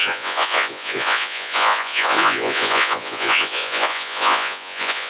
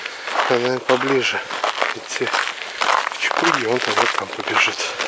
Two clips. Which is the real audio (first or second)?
second